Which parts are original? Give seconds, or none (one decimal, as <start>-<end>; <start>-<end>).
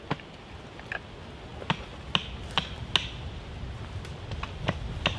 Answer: 0.0-5.2